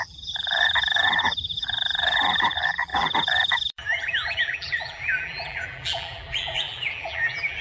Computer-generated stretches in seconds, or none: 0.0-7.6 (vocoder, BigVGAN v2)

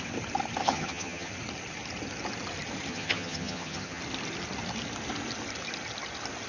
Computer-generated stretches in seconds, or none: 0.6-1.3 (vocoder, HiFi-GAN); 2.9-4.0

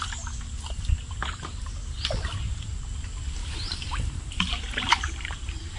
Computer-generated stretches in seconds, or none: 3.4-5.8 (vocoder, BigVGAN v2)

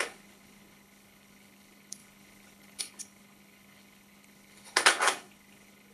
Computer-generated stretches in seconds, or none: 0.0-5.9 (codec, HILCodec)

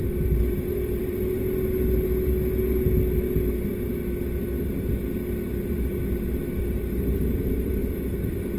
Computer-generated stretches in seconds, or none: 0.0-1.4 (vocoder, BigVGAN v2); 6.5-8.6

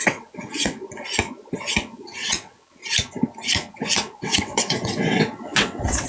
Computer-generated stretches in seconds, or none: 0.0-0.8 (vocoder, WaveNeXt); 1.6-2.8; 3.7-6.1

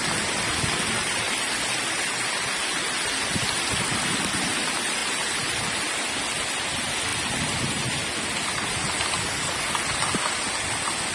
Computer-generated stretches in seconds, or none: 5.0-5.6 (vocoder, BigVGAN v2)